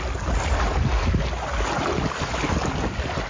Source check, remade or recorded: recorded